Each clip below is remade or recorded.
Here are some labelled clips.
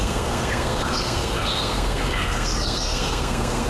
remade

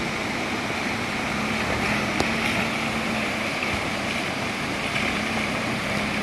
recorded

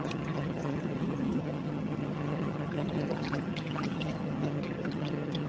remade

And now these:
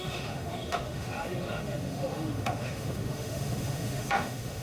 remade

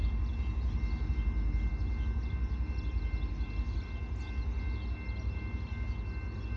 recorded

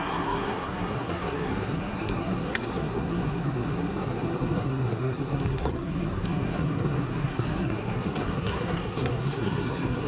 remade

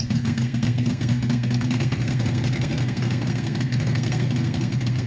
remade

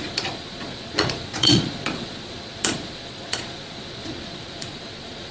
remade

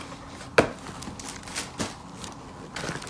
recorded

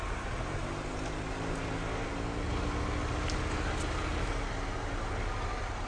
recorded